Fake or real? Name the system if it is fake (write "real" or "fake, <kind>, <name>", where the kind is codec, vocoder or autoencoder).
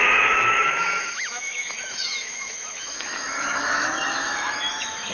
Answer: fake, autoencoder, DAC-VAE